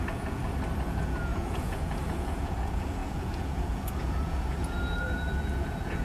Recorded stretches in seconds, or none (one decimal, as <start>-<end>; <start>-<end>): 0.4-0.9